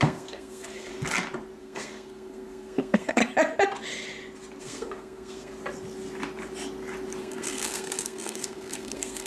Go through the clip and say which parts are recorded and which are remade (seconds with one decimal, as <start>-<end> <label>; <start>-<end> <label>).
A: 0.0-0.9 remade; 0.9-1.6 recorded; 1.6-3.2 remade; 3.2-4.6 recorded; 4.6-5.5 remade; 5.5-7.2 recorded; 7.2-9.3 remade